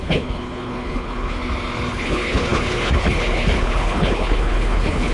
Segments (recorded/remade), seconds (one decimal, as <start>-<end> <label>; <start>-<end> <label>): 0.0-1.4 remade; 1.4-1.9 recorded; 1.9-5.1 remade